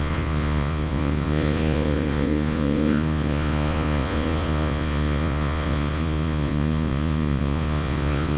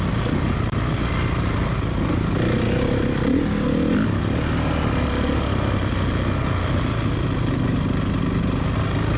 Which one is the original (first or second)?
second